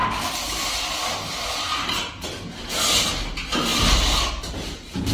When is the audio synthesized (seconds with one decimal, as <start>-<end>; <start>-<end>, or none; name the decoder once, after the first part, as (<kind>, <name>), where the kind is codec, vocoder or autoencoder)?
none